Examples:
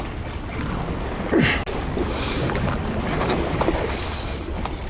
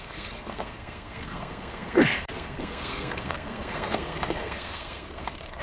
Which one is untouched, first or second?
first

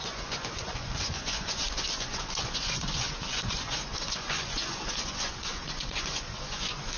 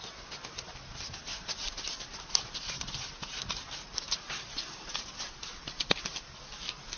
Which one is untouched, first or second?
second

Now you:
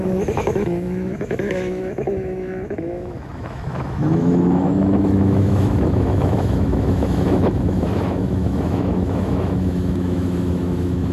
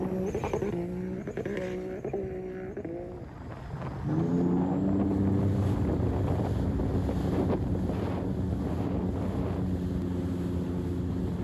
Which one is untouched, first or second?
second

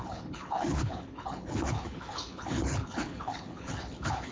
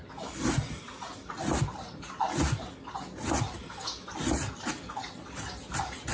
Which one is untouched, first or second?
second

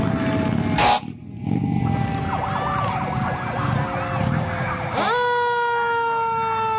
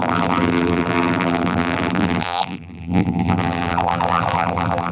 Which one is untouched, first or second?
first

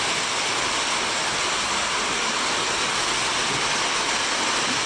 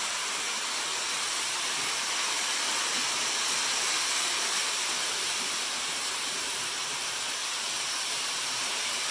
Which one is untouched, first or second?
first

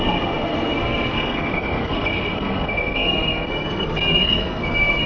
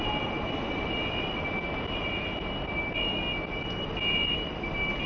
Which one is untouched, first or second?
second